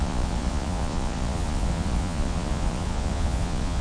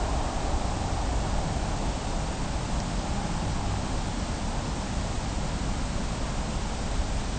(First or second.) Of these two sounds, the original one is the second